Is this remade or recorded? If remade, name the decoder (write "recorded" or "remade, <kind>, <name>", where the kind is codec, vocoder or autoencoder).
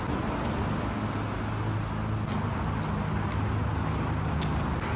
recorded